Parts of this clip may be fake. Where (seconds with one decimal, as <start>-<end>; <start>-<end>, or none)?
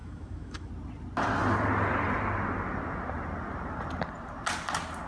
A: 0.0-0.7